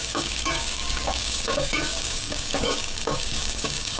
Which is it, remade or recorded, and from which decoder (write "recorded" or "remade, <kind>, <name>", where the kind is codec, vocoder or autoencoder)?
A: remade, codec, DAC